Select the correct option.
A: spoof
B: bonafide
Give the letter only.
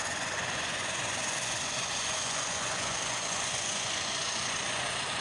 A